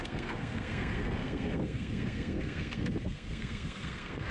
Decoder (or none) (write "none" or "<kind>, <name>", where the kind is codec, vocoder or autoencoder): codec, SNAC